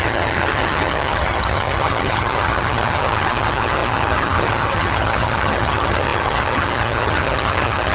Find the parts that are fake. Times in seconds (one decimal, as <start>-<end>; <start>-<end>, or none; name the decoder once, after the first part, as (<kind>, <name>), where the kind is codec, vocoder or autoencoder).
0.0-7.9 (vocoder, HiFi-GAN)

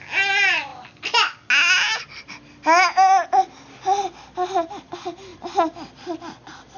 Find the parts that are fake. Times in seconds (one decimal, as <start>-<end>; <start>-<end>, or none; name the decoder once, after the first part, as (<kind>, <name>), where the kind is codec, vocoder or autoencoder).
none

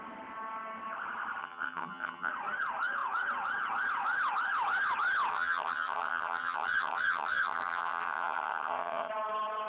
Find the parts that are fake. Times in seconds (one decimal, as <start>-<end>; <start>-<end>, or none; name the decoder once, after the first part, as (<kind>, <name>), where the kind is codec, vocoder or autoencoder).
1.4-2.3 (vocoder, HiFi-GAN); 5.3-9.1

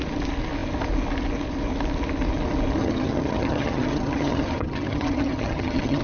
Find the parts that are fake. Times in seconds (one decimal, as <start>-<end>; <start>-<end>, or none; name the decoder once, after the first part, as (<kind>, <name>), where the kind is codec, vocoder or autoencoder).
2.8-6.0 (vocoder, HiFi-GAN)

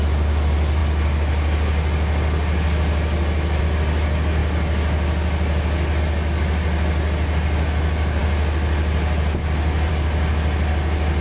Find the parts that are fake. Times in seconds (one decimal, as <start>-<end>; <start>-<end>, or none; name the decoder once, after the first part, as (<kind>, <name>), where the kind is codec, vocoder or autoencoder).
none

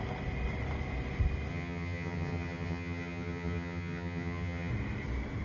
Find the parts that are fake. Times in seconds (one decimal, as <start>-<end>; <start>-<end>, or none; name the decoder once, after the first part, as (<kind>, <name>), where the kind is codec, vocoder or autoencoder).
1.5-4.7 (vocoder, HiFi-GAN)

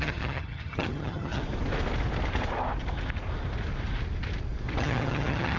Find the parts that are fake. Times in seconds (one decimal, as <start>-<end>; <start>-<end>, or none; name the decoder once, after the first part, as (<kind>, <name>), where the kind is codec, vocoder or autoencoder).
0.0-1.4 (vocoder, HiFi-GAN); 4.8-5.6